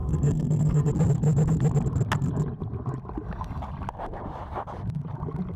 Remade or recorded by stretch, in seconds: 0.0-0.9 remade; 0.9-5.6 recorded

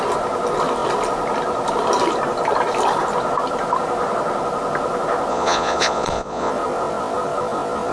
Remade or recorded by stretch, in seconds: 0.0-5.3 recorded; 5.3-6.5 remade; 6.5-7.9 recorded

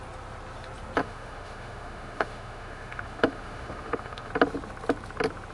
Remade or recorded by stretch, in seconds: 0.0-1.0 recorded; 1.0-4.3 remade; 4.3-5.5 recorded

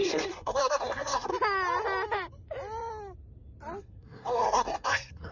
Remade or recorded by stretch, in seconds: 0.0-1.3 remade; 1.3-3.8 recorded; 3.8-5.3 remade

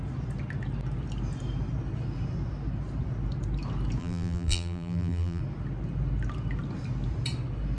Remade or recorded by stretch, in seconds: 0.0-4.0 recorded; 4.0-5.4 remade; 5.4-7.8 recorded

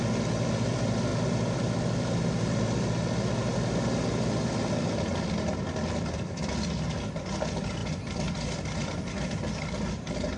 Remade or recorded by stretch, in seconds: 0.0-10.4 recorded

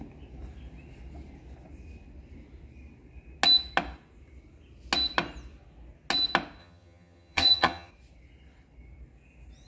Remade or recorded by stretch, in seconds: 0.0-6.6 recorded; 6.6-7.9 remade; 7.9-9.7 recorded